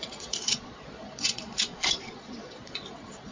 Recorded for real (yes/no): no